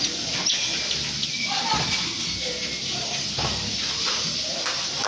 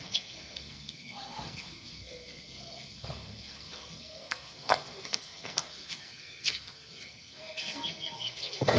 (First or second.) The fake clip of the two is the second